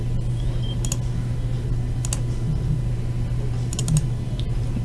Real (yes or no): yes